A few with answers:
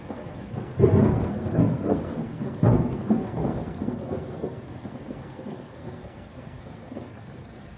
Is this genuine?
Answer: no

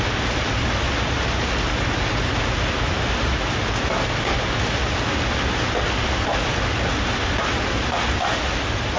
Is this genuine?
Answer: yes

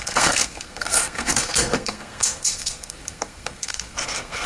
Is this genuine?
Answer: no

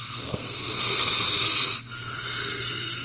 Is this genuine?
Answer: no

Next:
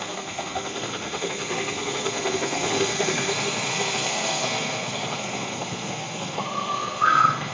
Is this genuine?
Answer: no